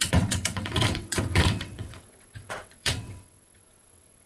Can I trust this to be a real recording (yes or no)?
no